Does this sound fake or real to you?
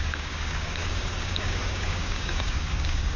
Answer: fake